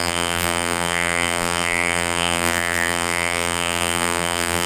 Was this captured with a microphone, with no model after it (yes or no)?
no